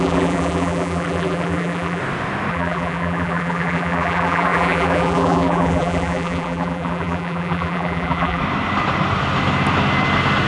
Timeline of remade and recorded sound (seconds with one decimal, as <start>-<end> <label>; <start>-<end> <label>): 0.0-2.0 remade; 2.0-2.5 recorded; 2.5-8.4 remade; 8.4-10.5 recorded